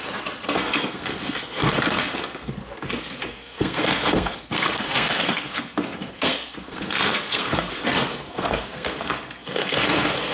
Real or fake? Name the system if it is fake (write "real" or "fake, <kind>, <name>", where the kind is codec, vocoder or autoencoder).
fake, codec, SNAC